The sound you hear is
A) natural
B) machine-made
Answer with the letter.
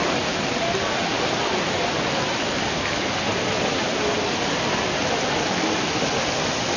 A